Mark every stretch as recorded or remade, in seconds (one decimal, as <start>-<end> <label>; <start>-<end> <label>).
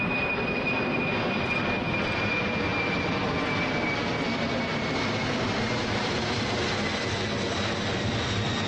0.0-8.7 remade